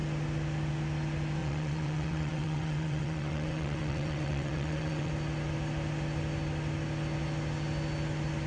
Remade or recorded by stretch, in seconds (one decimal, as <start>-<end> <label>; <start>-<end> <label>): 0.0-1.4 recorded; 1.4-5.1 remade; 5.1-8.5 recorded